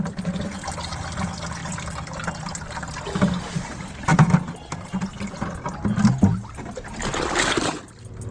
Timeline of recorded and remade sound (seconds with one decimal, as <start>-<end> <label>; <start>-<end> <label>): 0.0-8.3 recorded